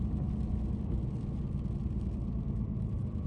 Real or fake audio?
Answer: real